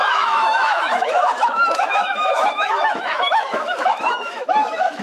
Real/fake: fake